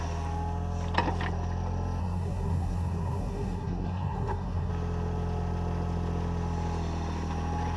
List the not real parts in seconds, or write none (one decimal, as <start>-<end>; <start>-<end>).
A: 2.0-4.7